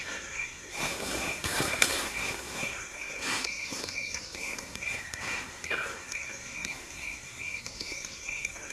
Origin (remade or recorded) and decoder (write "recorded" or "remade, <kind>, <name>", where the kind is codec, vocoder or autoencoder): remade, codec, SNAC